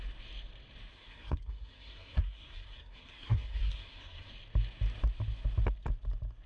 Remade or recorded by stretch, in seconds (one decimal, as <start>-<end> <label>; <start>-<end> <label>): 0.0-0.9 recorded; 0.9-4.3 remade; 4.3-6.5 recorded